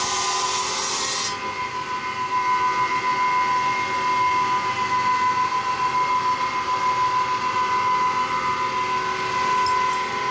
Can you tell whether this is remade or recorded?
recorded